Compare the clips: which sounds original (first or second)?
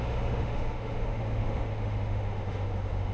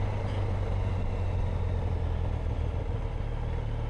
second